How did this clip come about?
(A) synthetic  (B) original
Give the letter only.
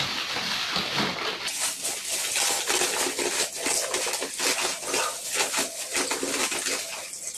B